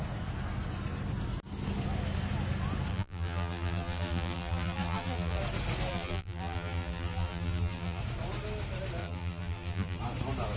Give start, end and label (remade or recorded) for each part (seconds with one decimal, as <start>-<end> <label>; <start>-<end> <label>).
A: 0.0-2.9 recorded; 2.9-5.4 remade; 5.4-5.9 recorded; 5.9-8.0 remade; 8.0-9.0 recorded; 9.0-10.0 remade; 10.0-10.6 recorded